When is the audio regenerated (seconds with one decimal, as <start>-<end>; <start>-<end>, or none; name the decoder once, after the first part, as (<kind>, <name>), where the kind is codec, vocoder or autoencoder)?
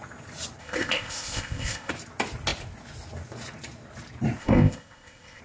0.6-1.9 (codec, ZipCodec); 4.4-5.4